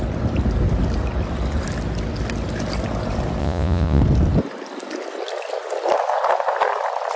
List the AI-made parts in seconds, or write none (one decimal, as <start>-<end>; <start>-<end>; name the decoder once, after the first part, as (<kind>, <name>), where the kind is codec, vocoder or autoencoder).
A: 3.4-4.0 (vocoder, Vocos)